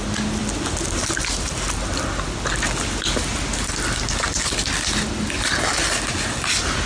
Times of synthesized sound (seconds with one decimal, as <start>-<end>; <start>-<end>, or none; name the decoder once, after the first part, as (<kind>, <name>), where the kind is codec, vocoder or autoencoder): none